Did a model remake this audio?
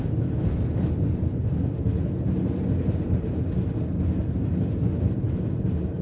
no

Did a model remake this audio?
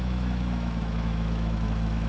yes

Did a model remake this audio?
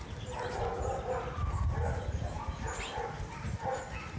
no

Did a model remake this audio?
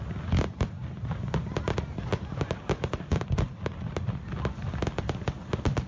no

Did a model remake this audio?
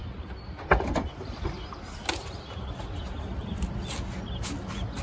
no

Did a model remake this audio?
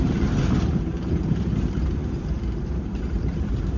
yes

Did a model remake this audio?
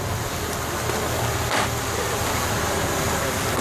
no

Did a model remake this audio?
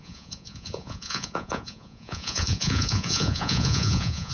yes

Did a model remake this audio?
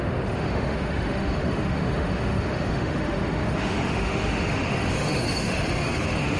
yes